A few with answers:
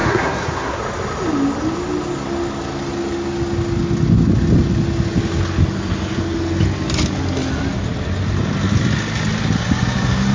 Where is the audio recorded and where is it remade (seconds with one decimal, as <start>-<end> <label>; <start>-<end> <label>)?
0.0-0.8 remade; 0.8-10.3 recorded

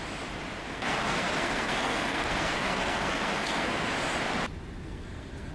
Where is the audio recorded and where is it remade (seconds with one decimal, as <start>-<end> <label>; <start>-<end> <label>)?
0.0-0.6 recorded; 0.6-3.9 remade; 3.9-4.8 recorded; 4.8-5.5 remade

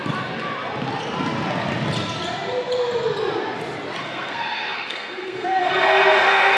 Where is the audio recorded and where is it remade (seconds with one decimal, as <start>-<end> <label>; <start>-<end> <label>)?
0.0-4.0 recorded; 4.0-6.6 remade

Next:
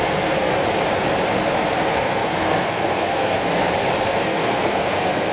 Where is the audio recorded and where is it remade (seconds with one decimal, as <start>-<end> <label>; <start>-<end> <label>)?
0.0-0.5 remade; 0.5-1.9 recorded; 1.9-3.5 remade; 3.5-4.0 recorded; 4.0-5.3 remade

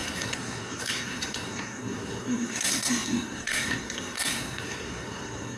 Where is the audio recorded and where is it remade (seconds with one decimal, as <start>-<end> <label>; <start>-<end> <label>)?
0.0-5.6 remade